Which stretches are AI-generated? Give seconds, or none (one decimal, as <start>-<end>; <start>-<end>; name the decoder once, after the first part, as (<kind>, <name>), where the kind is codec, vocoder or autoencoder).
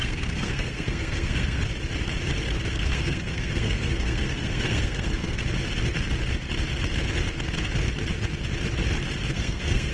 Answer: 0.0-1.6 (codec, SNAC); 2.7-5.4; 9.3-9.9